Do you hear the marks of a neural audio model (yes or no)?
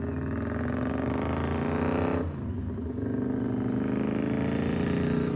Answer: no